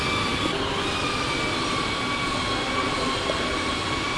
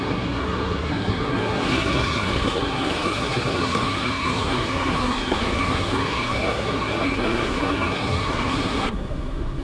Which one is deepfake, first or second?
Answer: second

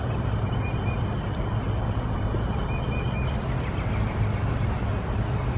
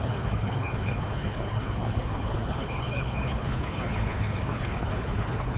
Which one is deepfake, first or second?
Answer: second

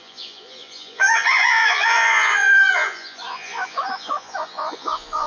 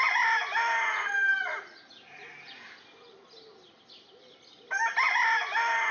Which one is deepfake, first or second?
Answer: first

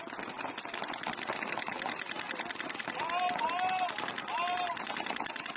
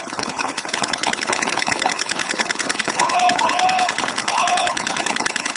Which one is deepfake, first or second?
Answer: second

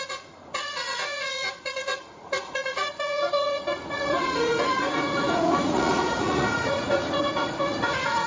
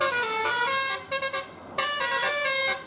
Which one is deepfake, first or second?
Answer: first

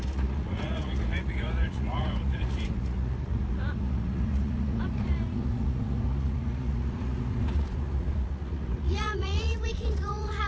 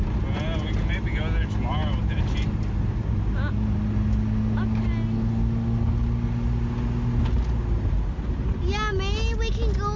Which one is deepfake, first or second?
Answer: first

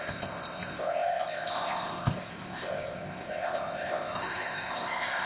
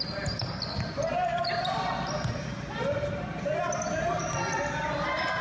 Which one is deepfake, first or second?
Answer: first